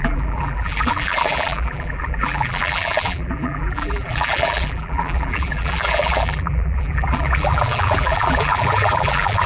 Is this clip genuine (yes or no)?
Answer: no